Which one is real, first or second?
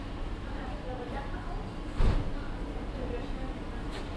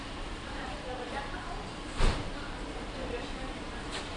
first